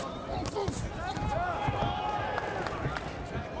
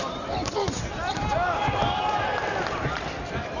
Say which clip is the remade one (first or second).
second